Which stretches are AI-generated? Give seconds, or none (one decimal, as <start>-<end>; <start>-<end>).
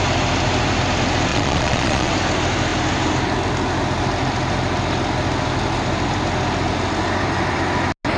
1.3-2.1